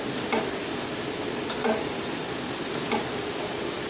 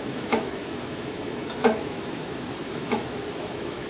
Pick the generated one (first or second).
second